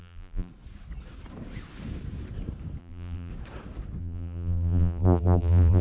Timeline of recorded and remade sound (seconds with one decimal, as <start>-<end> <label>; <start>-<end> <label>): 0.0-0.5 remade; 0.5-2.8 recorded; 2.8-3.3 remade; 3.3-4.0 recorded; 4.0-5.8 remade